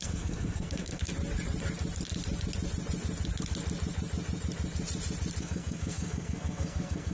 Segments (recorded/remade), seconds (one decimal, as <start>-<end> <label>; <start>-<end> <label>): 0.0-1.1 remade; 1.1-5.4 recorded; 5.4-7.1 remade